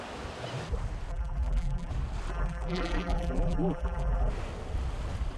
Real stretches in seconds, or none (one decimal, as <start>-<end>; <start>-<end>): 0.0-1.1; 1.9-2.3; 4.3-5.4